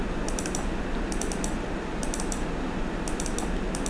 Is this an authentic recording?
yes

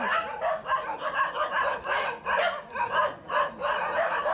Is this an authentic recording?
yes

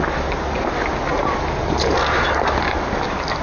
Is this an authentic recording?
yes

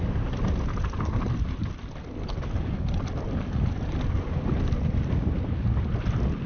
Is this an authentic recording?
yes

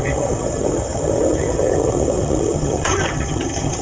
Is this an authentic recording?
no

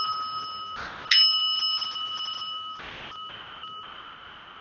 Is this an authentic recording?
yes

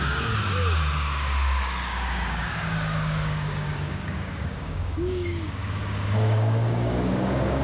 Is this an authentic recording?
no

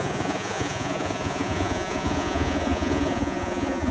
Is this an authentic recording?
no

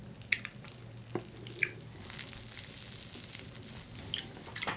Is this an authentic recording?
yes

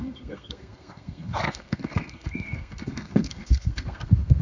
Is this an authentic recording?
no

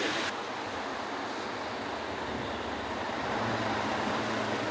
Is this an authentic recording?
yes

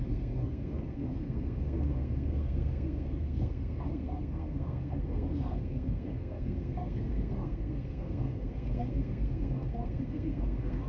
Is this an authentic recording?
no